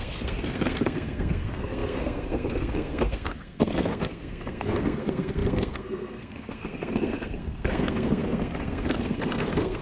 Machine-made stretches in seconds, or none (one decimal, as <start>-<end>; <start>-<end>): 0.0-9.8